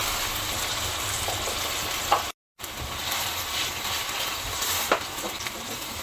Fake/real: real